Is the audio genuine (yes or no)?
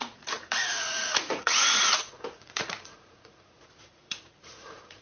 no